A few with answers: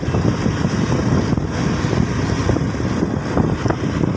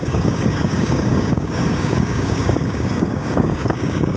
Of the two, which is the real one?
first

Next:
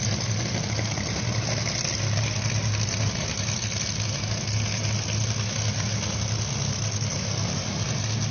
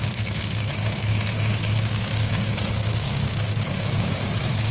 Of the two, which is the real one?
first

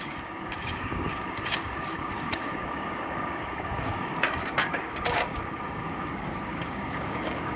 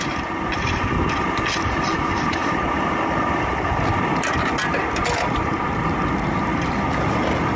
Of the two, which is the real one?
second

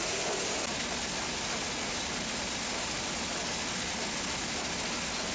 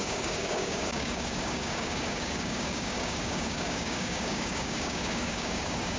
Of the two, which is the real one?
first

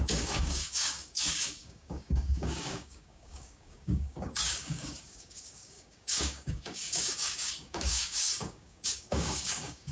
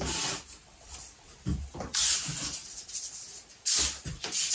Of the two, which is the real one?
second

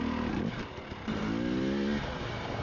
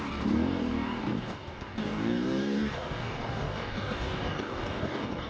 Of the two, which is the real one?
first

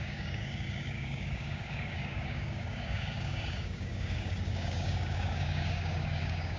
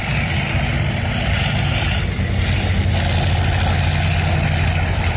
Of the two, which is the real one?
second